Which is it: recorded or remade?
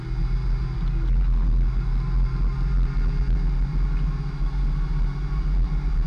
recorded